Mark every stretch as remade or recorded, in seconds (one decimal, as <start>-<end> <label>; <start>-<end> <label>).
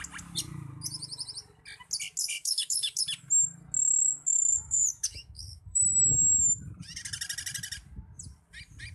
0.0-2.2 recorded; 2.2-3.0 remade; 3.0-4.6 recorded; 4.6-5.8 remade; 5.8-8.9 recorded